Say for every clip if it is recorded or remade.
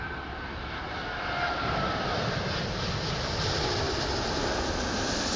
recorded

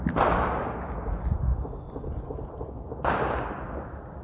recorded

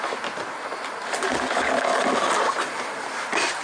recorded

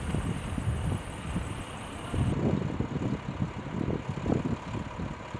recorded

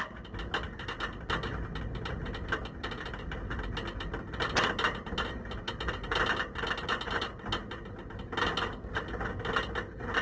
recorded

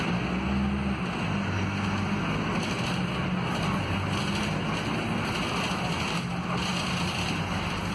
recorded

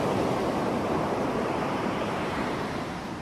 remade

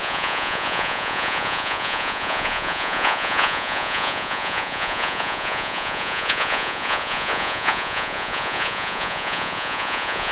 remade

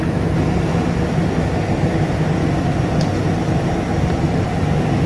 recorded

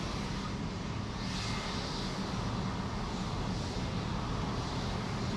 recorded